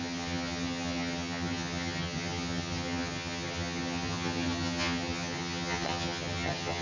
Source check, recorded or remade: remade